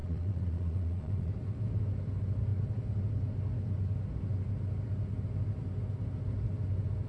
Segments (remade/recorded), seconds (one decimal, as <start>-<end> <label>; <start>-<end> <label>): 0.0-1.3 remade; 1.3-7.1 recorded